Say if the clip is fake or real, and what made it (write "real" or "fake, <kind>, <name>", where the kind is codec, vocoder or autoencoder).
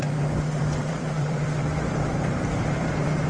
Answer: fake, vocoder, BigVGAN v2